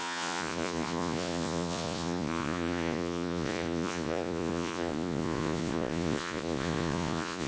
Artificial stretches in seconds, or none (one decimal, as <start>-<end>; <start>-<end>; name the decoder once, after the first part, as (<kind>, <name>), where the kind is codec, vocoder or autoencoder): 0.0-7.5 (vocoder, Vocos)